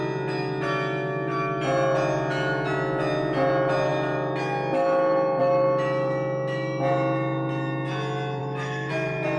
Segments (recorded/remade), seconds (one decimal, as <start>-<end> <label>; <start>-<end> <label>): 0.0-8.4 recorded; 8.4-8.9 remade; 8.9-9.4 recorded